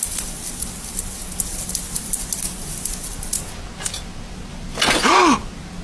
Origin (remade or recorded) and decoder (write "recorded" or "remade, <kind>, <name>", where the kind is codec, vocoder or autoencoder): recorded